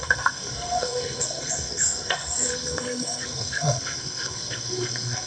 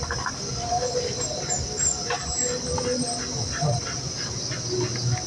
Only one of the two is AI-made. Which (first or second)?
first